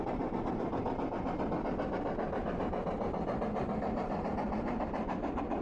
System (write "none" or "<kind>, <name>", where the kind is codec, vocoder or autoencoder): none